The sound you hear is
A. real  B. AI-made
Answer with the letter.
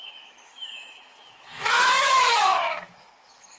B